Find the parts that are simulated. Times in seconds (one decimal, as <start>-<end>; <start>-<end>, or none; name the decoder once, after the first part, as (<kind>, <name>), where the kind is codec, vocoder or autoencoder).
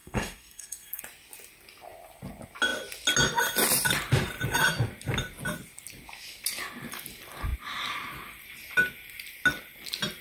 0.0-1.0 (codec, SNAC)